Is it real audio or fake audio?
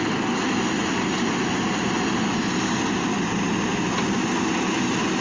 real